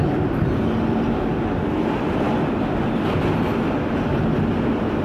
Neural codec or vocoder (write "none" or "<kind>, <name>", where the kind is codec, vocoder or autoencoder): none